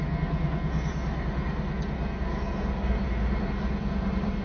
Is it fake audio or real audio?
real